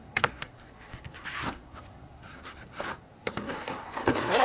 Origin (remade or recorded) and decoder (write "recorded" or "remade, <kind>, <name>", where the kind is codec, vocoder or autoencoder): remade, codec, SNAC